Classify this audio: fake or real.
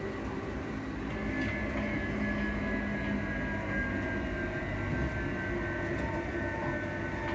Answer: real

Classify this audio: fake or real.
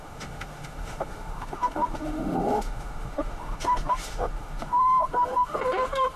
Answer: fake